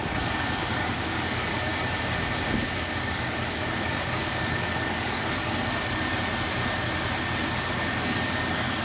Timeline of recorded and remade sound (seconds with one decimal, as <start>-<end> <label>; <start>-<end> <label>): 0.0-1.7 remade; 1.7-2.6 recorded; 2.6-5.4 remade; 5.4-7.6 recorded; 7.6-8.8 remade